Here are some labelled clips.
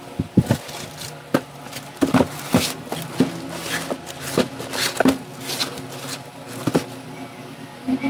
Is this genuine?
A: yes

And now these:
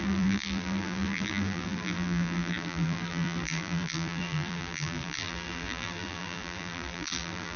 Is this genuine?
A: no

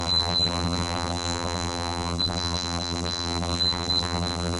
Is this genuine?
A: no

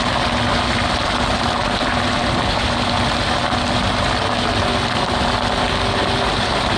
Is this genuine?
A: no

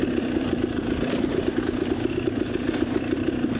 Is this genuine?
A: no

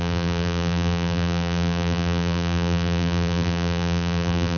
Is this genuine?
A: no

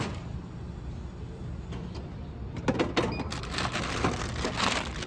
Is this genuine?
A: yes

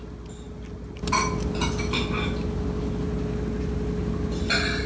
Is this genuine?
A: yes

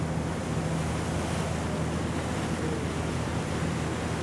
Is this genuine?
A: yes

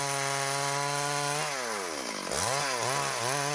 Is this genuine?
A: yes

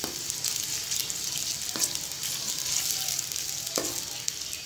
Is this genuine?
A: yes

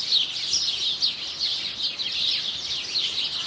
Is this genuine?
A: yes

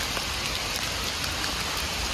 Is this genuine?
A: yes